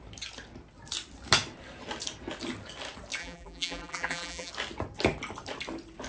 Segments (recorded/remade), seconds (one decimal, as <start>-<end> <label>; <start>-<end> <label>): 0.0-3.2 recorded; 3.2-4.5 remade; 4.5-6.1 recorded

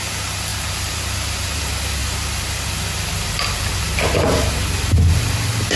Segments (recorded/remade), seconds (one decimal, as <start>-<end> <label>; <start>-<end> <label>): 0.0-0.5 recorded; 0.5-1.6 remade; 1.6-5.8 recorded

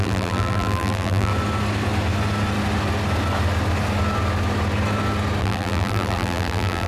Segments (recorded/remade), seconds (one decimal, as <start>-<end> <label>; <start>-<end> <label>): 0.0-1.3 remade; 1.3-5.4 recorded; 5.4-6.9 remade